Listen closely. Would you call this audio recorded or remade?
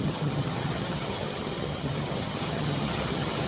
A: remade